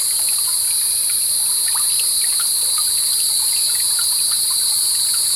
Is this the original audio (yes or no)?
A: yes